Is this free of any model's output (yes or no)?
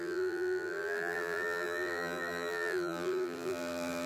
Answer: no